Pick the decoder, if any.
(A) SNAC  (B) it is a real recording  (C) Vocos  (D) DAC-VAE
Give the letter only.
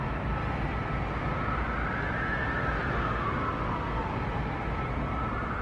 B